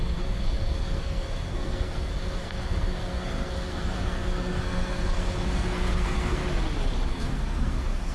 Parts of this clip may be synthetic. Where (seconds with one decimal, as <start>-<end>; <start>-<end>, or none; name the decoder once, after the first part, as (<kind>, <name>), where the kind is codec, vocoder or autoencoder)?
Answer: 0.0-6.4 (codec, SNAC); 7.1-8.1